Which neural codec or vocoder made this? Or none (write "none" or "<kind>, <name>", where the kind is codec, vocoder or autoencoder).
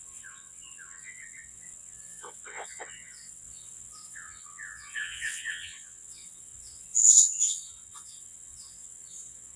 vocoder, WaveNeXt